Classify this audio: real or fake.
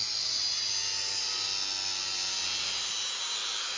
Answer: real